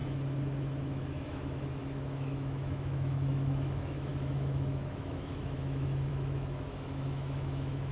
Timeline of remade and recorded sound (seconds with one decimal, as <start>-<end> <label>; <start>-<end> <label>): 0.0-0.8 recorded; 0.8-7.9 remade